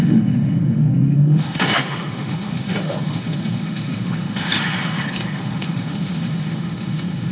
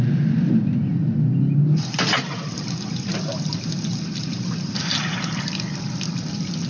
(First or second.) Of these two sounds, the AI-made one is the first